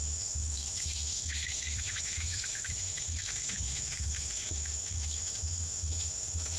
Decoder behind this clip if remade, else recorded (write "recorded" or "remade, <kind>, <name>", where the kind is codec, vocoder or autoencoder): remade, autoencoder, DAC-VAE